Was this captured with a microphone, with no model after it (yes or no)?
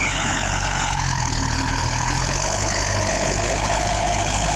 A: no